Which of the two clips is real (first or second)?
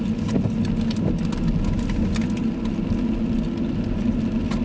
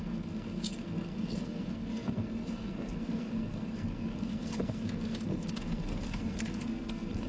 first